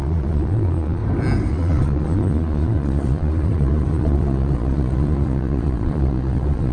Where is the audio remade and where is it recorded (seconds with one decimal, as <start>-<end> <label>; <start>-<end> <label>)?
0.0-1.0 remade; 1.0-1.5 recorded; 1.5-6.7 remade